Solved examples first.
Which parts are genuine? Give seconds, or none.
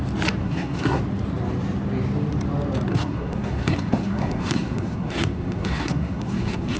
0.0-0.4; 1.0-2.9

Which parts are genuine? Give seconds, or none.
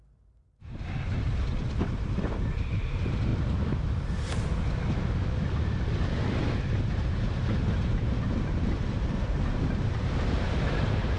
3.3-6.0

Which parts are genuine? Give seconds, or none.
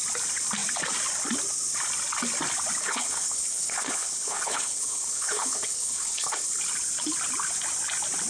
0.0-2.8; 6.6-8.3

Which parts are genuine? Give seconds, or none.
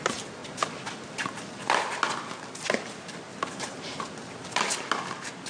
0.0-3.3; 4.0-5.5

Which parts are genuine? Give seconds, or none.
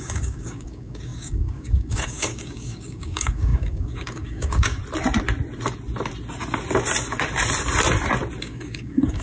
4.8-8.4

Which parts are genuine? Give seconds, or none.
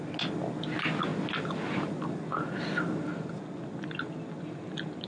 0.0-5.1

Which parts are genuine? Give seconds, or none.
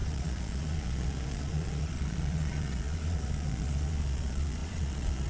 none